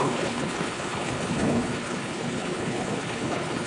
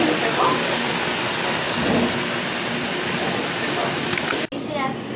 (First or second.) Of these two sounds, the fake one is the first